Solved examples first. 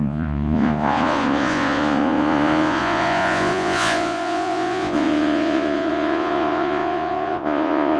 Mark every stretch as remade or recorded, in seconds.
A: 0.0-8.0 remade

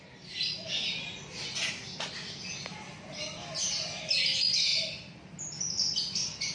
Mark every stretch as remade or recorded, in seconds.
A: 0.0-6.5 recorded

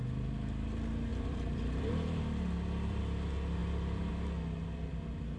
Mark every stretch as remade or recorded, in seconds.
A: 0.0-1.1 recorded; 1.1-3.0 remade; 3.0-3.6 recorded; 3.6-4.1 remade; 4.1-5.4 recorded

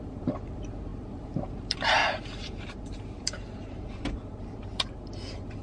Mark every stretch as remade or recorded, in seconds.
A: 0.0-5.6 remade

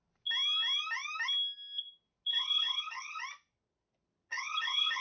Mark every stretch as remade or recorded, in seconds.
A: 0.0-2.3 recorded; 2.3-3.2 remade; 3.2-4.3 recorded; 4.3-5.0 remade

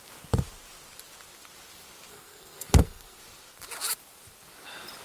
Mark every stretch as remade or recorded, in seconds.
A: 0.0-2.1 recorded; 2.1-3.2 remade; 3.2-5.0 recorded

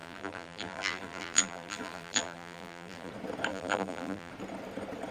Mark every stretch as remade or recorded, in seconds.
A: 0.0-3.1 remade; 3.1-3.5 recorded; 3.5-4.3 remade; 4.3-5.1 recorded